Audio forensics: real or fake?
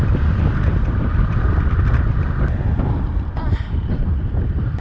fake